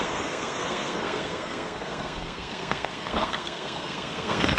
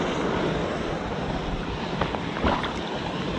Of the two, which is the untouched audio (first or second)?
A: second